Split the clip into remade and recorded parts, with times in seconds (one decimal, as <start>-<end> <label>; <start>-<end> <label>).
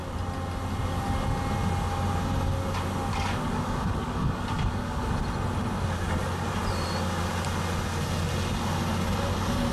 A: 0.0-3.1 recorded; 3.1-5.1 remade; 5.1-9.7 recorded